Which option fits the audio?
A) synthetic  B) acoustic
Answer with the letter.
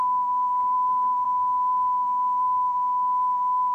A